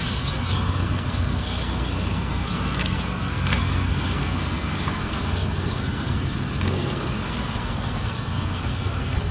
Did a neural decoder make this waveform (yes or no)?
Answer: yes